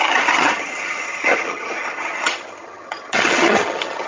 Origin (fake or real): fake